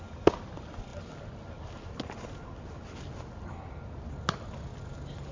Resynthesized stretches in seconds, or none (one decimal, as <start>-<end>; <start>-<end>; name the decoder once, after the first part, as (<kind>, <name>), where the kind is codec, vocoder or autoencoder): none